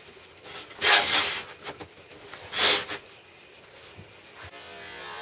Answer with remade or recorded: recorded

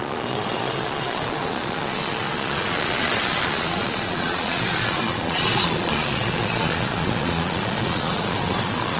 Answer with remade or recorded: remade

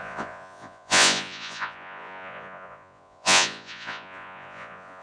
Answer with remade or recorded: remade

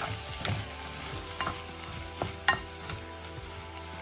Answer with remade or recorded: recorded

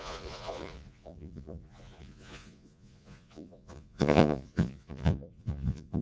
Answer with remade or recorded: remade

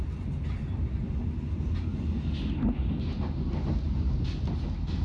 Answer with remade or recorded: recorded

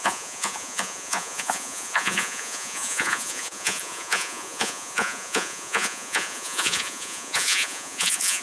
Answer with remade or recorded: remade